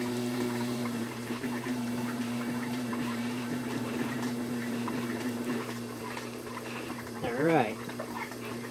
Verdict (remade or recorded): remade